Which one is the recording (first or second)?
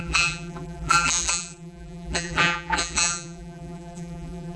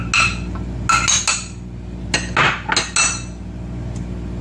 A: second